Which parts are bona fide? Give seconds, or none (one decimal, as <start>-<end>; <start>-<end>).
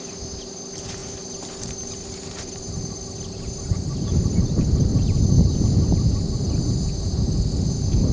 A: 4.9-8.1